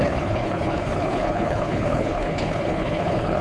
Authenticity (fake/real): fake